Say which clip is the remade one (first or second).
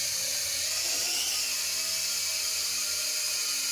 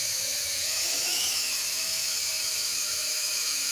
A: second